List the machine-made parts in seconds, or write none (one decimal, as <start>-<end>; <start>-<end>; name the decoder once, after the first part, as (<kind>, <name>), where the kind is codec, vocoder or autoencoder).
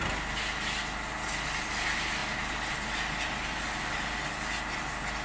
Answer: none